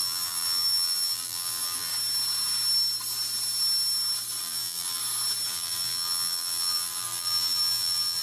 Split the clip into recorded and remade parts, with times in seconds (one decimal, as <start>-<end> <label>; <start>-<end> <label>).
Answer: 0.0-1.9 remade; 1.9-4.4 recorded; 4.4-5.0 remade; 5.0-5.5 recorded; 5.5-8.2 remade